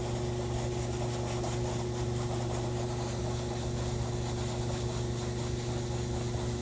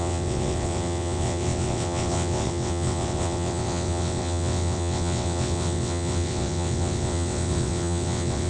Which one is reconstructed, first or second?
second